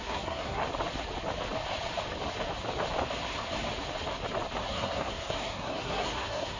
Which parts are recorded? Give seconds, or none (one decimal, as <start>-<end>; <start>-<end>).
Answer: 0.6-4.6